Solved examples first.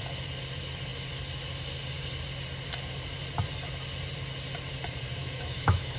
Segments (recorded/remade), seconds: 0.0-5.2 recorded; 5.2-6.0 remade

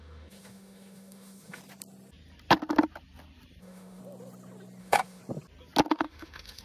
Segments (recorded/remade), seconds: 0.0-1.6 remade; 1.6-3.6 recorded; 3.6-4.0 remade; 4.0-4.8 recorded; 4.8-5.2 remade; 5.2-5.9 recorded; 5.9-6.6 remade

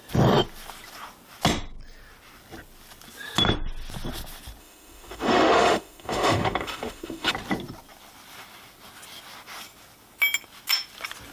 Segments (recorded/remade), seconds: 0.0-4.6 recorded; 4.6-7.3 remade; 7.3-11.3 recorded

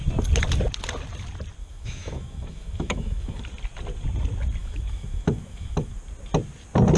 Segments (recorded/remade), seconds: 0.0-1.6 recorded; 1.6-3.4 remade; 3.4-4.6 recorded; 4.6-6.0 remade; 6.0-7.0 recorded

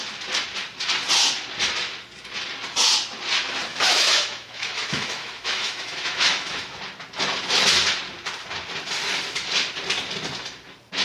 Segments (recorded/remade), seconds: 0.0-3.7 recorded; 3.7-6.8 remade; 6.8-11.0 recorded

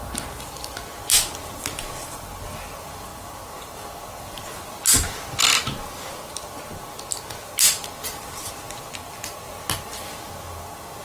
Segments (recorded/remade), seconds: 0.0-11.0 recorded

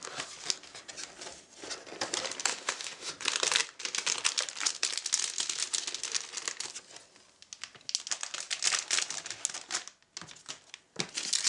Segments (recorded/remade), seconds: 0.0-2.5 recorded; 2.5-3.1 remade; 3.1-11.5 recorded

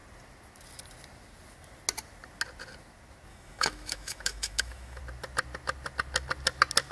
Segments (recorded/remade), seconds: 0.0-3.3 recorded; 3.3-5.0 remade; 5.0-6.9 recorded